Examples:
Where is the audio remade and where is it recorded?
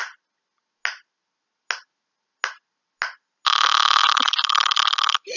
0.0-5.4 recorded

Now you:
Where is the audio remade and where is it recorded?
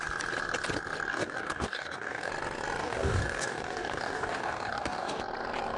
0.0-1.1 recorded; 1.1-2.3 remade; 2.3-2.8 recorded; 2.8-5.2 remade; 5.2-5.8 recorded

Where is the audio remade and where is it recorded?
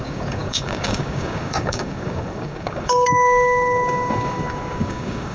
0.0-5.3 remade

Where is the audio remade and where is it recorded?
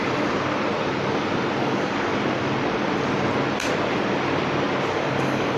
0.0-1.6 recorded; 1.6-2.1 remade; 2.1-4.9 recorded; 4.9-5.6 remade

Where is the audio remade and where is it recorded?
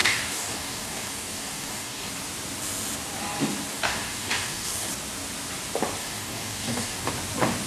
0.0-2.1 remade; 2.1-3.7 recorded; 3.7-4.9 remade; 4.9-6.0 recorded; 6.0-7.1 remade; 7.1-7.7 recorded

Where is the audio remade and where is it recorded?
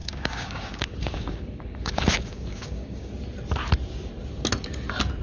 0.0-3.1 remade; 3.1-5.2 recorded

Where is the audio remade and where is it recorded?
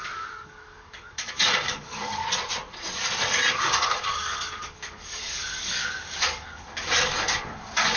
0.0-2.2 remade; 2.2-3.5 recorded; 3.5-8.0 remade